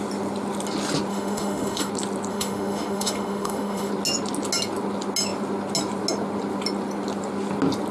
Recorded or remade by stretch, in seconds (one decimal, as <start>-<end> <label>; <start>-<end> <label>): 0.0-1.1 recorded; 1.1-1.9 remade; 1.9-2.3 recorded; 2.3-3.9 remade; 3.9-7.9 recorded